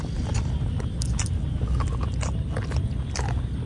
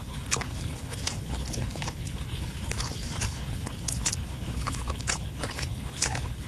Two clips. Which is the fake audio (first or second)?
second